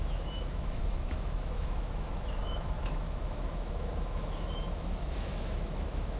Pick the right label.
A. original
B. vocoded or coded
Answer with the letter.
B